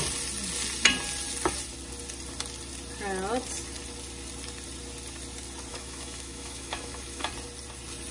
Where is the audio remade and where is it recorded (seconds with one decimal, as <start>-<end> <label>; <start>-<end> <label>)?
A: 0.0-5.7 recorded; 5.7-7.3 remade; 7.3-8.1 recorded